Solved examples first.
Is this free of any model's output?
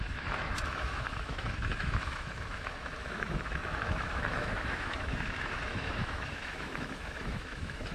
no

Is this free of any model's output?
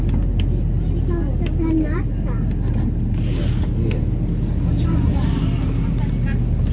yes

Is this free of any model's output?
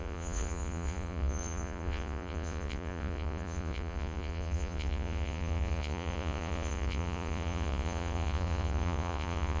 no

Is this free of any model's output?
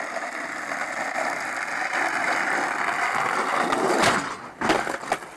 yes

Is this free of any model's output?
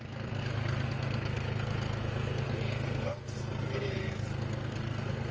no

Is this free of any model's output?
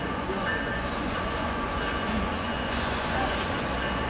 no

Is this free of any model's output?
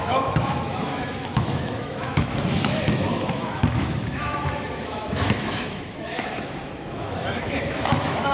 no